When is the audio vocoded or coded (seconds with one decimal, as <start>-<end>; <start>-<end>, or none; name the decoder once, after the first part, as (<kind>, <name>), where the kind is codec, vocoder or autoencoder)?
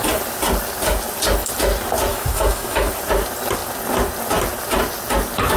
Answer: 2.1-2.9 (autoencoder, DAC-VAE)